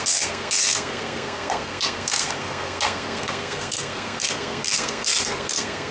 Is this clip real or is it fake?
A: fake